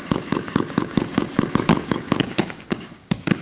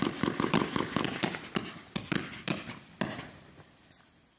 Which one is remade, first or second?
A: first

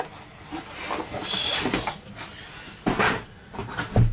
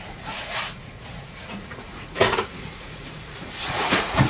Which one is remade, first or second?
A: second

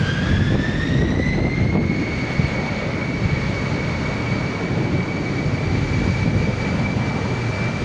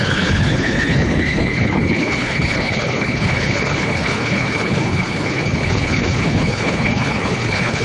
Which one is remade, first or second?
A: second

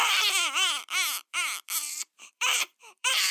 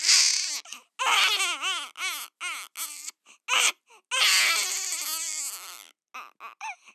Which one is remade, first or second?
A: first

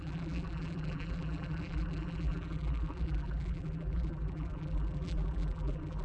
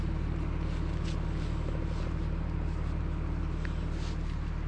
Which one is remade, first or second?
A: first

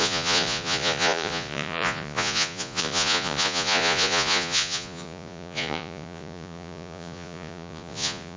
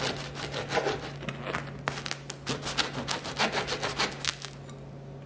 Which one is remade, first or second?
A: first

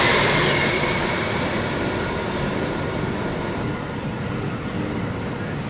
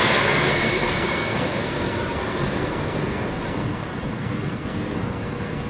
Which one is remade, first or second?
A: second